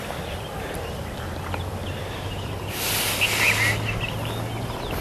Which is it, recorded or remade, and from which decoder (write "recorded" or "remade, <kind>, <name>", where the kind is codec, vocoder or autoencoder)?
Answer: recorded